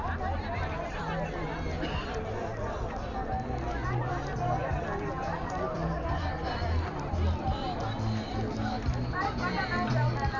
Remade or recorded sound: recorded